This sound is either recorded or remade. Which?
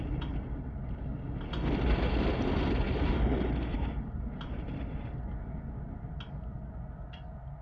recorded